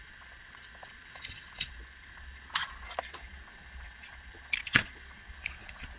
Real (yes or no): no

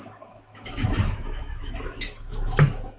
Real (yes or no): no